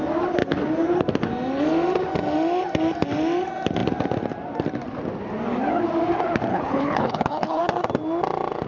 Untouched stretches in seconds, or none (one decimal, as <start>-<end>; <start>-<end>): 0.0-6.5; 7.6-8.7